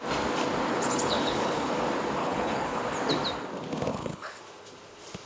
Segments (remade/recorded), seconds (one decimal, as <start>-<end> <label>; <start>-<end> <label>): 0.0-0.7 recorded; 0.7-1.7 remade; 1.7-2.2 recorded; 2.2-2.8 remade; 2.8-3.9 recorded; 3.9-4.4 remade; 4.4-5.3 recorded